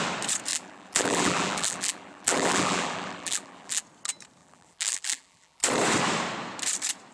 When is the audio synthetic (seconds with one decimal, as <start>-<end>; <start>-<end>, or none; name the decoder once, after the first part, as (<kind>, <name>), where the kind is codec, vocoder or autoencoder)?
0.5-3.8 (vocoder, BigVGAN v2); 4.4-5.6